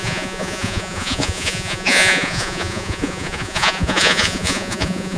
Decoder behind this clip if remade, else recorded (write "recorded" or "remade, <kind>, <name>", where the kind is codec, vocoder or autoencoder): remade, vocoder, Vocos